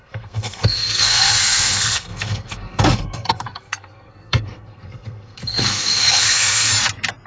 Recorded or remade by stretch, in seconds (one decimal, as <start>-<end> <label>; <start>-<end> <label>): 0.0-6.7 remade; 6.7-7.3 recorded